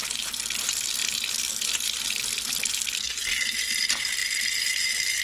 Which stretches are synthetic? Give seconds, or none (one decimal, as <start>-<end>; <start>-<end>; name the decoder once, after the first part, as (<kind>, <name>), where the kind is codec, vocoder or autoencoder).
1.0-3.8 (vocoder, BigVGAN v2)